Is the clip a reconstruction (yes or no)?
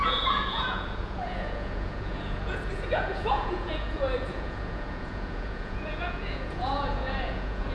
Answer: yes